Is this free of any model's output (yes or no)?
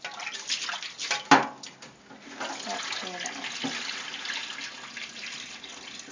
yes